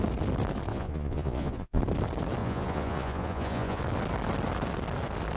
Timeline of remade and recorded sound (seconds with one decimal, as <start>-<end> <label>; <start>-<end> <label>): 0.0-0.7 recorded; 0.7-1.8 remade; 1.8-2.4 recorded; 2.4-3.8 remade; 3.8-5.4 recorded

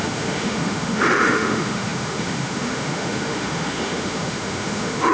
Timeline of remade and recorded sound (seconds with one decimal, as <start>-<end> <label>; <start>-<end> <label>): 0.0-5.1 remade

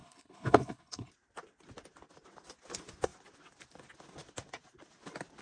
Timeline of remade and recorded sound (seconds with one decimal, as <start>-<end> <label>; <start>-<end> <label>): 0.0-1.1 remade; 1.1-5.4 recorded

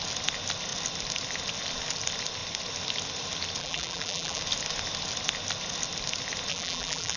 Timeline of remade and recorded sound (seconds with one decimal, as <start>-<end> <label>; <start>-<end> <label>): 0.0-3.6 recorded; 3.6-4.4 remade; 4.4-6.5 recorded; 6.5-7.2 remade

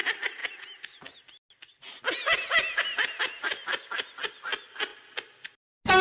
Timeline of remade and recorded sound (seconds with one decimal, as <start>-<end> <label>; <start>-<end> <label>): 0.0-6.0 recorded